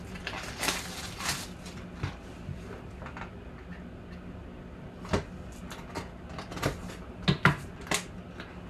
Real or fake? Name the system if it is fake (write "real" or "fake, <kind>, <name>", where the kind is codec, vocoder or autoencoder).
real